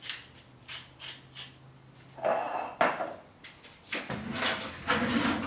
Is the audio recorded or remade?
recorded